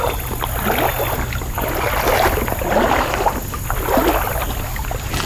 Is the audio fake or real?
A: real